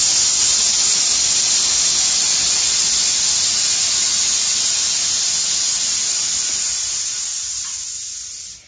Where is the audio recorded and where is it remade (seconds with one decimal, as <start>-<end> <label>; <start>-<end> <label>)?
0.0-8.7 recorded

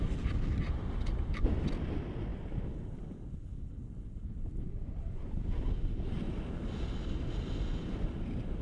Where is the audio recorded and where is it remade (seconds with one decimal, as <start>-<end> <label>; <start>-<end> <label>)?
0.0-2.3 recorded; 2.3-3.3 remade; 3.3-8.6 recorded